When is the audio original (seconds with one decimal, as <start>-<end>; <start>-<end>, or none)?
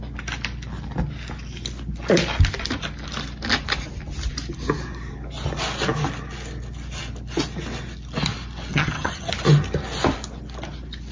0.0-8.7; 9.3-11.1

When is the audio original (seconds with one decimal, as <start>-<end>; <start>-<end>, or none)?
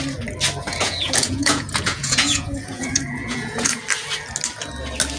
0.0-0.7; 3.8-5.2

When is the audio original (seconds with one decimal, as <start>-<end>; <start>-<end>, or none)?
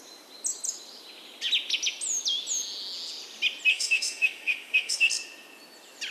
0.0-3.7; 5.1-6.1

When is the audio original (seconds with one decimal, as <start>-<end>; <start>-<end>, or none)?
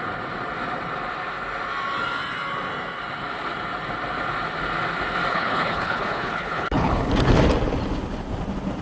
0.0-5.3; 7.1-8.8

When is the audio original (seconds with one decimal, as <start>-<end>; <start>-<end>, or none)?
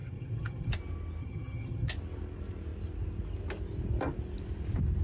0.7-1.2; 1.9-5.0